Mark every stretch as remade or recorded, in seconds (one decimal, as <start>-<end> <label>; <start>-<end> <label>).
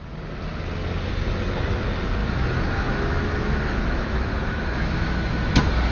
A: 0.0-2.2 recorded; 2.2-5.5 remade; 5.5-5.9 recorded